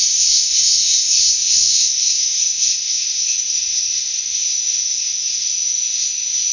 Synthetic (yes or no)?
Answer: yes